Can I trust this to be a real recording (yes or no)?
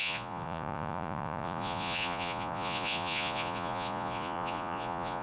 no